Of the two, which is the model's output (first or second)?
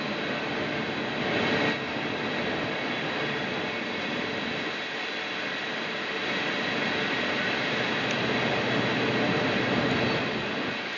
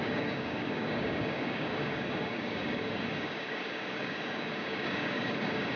second